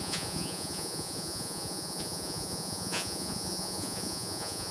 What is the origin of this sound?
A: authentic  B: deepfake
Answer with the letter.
B